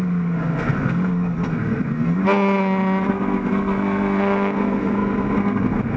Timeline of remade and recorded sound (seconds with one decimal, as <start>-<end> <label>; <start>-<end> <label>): 0.0-2.2 remade; 2.2-3.1 recorded; 3.1-6.0 remade